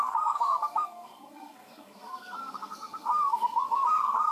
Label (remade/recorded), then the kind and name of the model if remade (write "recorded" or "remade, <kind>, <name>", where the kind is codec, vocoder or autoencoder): remade, codec, SNAC